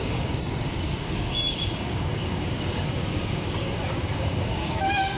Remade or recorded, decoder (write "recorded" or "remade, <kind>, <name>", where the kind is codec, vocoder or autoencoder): remade, codec, DAC